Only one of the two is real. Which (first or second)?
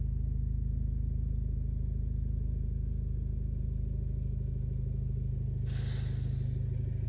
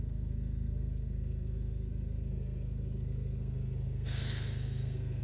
first